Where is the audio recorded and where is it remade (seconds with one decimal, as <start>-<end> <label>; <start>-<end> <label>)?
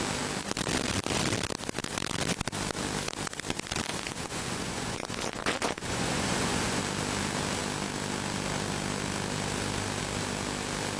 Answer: 0.0-3.9 recorded; 3.9-6.8 remade; 6.8-11.0 recorded